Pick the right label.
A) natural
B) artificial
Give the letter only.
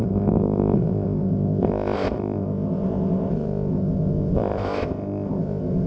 B